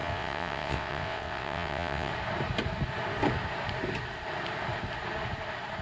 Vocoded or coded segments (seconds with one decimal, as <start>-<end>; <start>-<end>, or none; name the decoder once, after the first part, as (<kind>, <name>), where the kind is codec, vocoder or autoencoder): 0.0-2.1 (vocoder, WaveNeXt)